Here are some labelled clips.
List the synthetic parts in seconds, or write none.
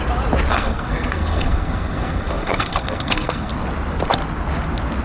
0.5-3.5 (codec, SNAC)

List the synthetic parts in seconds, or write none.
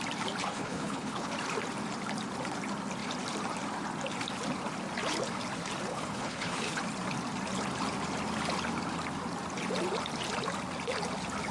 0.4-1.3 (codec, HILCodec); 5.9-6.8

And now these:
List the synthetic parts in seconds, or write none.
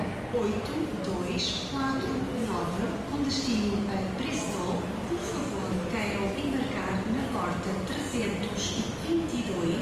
5.2-5.9 (autoencoder, DAC-VAE)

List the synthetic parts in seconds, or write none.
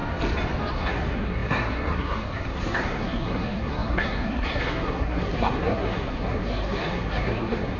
0.7-7.8 (codec, SNAC)